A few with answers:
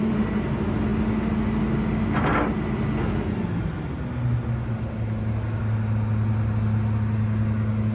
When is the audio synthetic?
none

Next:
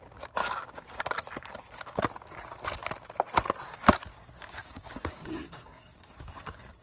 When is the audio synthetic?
0.4-1.0; 4.1-6.8